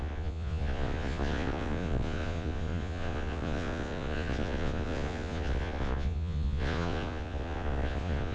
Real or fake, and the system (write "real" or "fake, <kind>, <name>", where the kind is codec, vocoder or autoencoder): fake, vocoder, Vocos